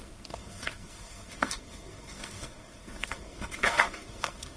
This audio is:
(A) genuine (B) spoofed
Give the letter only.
B